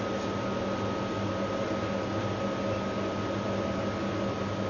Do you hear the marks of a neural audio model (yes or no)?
no